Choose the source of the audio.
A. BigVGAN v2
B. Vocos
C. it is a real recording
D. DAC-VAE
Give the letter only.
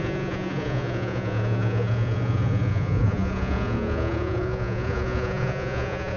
B